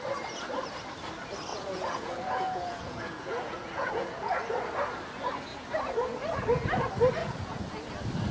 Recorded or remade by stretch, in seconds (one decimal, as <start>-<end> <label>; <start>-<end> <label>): 0.0-1.5 recorded; 1.5-4.4 remade; 4.4-7.2 recorded; 7.2-7.9 remade; 7.9-8.3 recorded